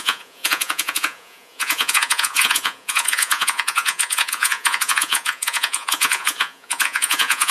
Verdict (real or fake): fake